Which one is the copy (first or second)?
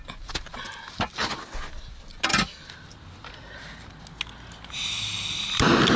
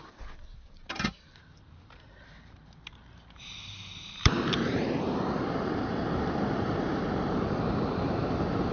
second